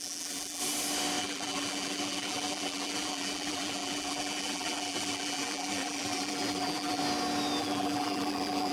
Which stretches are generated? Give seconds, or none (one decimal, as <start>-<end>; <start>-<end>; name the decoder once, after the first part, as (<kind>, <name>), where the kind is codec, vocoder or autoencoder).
0.0-0.6 (vocoder, BigVGAN v2); 1.2-7.0; 7.6-8.7